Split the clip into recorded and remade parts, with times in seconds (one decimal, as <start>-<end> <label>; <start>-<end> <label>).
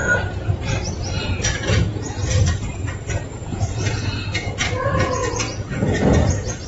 0.0-1.2 recorded; 1.2-2.2 remade; 2.2-3.2 recorded; 3.2-6.7 remade